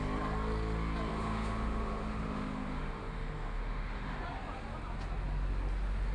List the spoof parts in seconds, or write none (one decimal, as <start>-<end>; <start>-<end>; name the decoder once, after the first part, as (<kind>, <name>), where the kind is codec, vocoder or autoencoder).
1.1-4.2 (autoencoder, DAC-VAE)